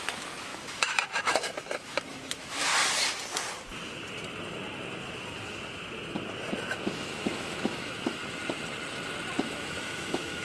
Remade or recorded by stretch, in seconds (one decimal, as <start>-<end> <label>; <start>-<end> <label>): 0.0-2.7 remade; 2.7-6.6 recorded; 6.6-8.2 remade; 8.2-9.4 recorded; 9.4-10.4 remade